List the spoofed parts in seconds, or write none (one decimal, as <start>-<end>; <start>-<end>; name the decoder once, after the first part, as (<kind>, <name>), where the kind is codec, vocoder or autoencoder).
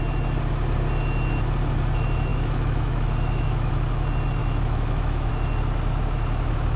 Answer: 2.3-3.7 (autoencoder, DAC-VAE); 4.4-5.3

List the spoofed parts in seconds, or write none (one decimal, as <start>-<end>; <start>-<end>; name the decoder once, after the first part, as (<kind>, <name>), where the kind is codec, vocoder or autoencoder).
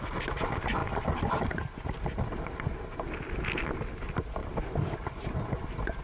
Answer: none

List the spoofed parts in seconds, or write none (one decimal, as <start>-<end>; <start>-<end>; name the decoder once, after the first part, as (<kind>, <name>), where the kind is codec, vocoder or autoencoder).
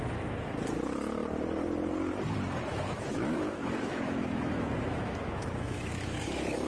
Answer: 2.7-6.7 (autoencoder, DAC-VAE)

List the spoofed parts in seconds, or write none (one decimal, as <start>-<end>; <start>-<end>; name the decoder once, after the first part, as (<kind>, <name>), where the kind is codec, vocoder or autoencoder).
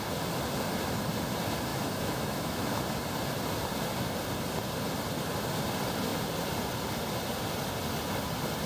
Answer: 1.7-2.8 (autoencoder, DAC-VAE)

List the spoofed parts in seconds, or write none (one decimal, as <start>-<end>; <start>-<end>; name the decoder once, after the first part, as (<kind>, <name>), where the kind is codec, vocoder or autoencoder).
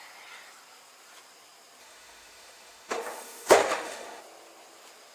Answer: 1.8-4.2 (autoencoder, DAC-VAE)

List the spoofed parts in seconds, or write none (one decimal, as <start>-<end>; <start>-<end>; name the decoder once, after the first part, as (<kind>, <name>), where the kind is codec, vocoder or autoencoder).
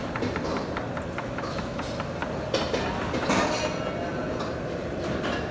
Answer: 1.2-1.8 (autoencoder, DAC-VAE)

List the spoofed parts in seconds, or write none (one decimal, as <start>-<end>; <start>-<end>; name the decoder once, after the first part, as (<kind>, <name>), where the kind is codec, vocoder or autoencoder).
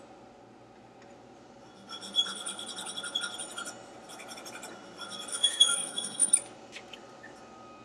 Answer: 5.3-6.3 (autoencoder, DAC-VAE)